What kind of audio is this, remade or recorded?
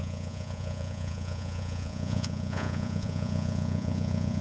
remade